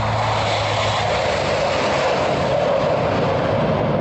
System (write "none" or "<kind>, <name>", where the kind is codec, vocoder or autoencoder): none